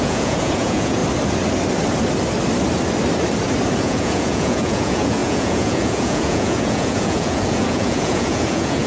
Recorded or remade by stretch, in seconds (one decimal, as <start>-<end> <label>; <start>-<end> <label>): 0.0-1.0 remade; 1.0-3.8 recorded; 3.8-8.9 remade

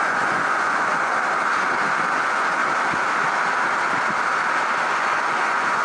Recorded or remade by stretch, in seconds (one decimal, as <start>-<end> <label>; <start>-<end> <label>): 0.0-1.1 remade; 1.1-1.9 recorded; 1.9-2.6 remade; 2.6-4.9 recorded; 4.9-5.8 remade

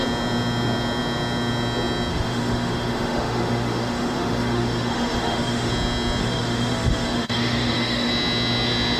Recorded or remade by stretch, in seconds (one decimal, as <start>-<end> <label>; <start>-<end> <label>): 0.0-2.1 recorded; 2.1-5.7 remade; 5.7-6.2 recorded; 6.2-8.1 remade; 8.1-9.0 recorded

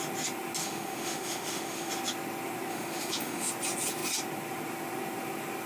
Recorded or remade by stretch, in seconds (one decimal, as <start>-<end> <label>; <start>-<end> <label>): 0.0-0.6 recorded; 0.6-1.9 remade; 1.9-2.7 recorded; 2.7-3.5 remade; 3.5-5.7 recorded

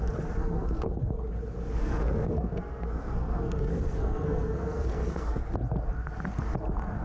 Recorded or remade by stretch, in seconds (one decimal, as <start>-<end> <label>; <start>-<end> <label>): 0.0-0.4 recorded; 0.4-1.1 remade; 1.1-1.8 recorded; 1.8-5.5 remade; 5.5-7.0 recorded

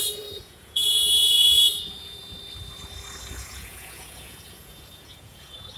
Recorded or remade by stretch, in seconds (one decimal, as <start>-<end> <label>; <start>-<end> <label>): 0.0-2.2 remade; 2.2-3.3 recorded; 3.3-5.8 remade

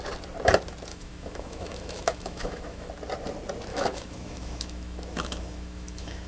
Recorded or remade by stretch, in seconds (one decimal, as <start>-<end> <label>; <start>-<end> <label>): 0.0-0.9 recorded; 0.9-2.9 remade; 2.9-3.7 recorded; 3.7-6.3 remade